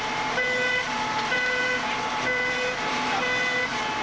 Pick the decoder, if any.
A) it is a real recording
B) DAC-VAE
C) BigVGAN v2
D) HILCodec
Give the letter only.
C